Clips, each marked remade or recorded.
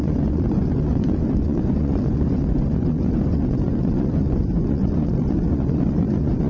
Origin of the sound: remade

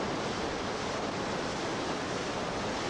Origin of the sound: recorded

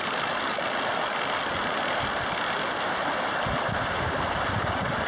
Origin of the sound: recorded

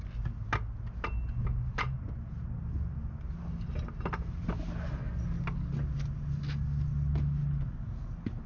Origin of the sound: recorded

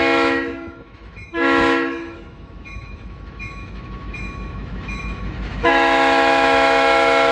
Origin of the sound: remade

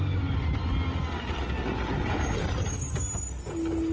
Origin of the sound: recorded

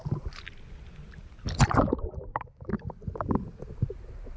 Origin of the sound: recorded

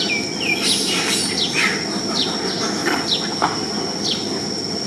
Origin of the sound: recorded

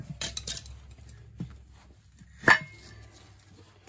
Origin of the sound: recorded